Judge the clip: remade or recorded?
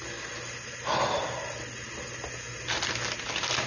recorded